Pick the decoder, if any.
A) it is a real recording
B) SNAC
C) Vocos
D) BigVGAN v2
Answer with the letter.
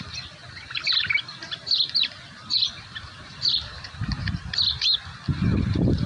D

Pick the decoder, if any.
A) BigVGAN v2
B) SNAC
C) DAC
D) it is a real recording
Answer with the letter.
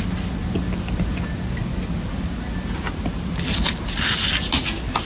D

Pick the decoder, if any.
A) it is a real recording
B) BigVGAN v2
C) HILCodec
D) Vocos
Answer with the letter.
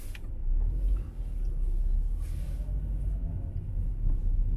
A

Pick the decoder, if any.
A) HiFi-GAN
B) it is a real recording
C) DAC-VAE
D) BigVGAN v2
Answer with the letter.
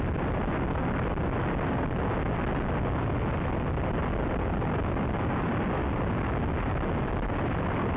B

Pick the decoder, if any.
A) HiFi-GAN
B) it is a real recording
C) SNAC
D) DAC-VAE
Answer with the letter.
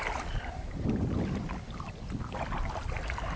B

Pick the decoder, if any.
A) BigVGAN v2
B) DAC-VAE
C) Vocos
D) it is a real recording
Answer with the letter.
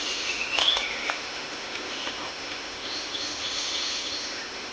B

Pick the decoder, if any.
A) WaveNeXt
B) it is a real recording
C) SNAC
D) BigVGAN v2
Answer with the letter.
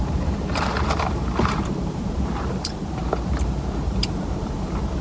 D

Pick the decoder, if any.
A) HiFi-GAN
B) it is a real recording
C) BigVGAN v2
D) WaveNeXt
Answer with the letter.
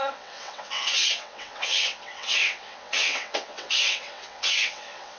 D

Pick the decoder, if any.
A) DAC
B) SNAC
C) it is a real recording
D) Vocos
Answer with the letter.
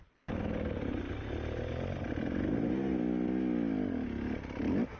C